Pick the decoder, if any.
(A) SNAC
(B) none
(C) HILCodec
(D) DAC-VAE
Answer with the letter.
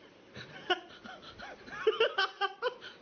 B